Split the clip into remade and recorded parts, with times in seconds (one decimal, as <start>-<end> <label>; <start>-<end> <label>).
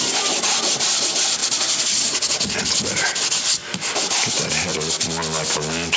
0.0-1.4 remade; 1.4-2.6 recorded; 2.6-4.7 remade; 4.7-6.0 recorded